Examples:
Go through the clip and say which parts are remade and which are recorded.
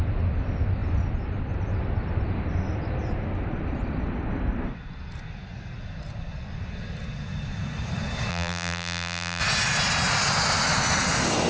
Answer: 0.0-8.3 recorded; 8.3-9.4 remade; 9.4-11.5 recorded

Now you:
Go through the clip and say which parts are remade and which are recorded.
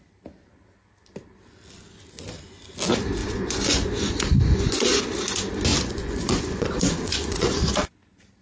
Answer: 0.0-3.2 recorded; 3.2-5.0 remade; 5.0-5.7 recorded; 5.7-7.9 remade; 7.9-8.4 recorded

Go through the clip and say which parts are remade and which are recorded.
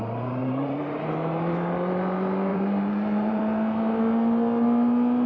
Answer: 0.0-0.4 recorded; 0.4-1.0 remade; 1.0-2.5 recorded; 2.5-3.4 remade; 3.4-5.3 recorded